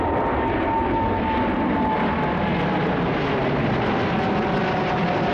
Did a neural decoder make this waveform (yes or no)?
no